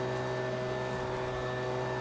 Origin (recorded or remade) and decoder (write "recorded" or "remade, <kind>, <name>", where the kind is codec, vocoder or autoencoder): recorded